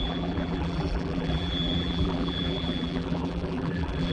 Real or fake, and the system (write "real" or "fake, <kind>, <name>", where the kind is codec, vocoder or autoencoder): fake, vocoder, BigVGAN v2